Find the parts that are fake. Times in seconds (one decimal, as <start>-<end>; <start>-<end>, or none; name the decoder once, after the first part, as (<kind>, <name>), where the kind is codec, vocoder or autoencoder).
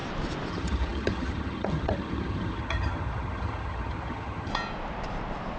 0.5-4.5 (vocoder, HiFi-GAN)